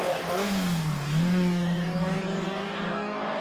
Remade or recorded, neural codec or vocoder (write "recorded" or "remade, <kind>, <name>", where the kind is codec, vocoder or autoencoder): remade, codec, DAC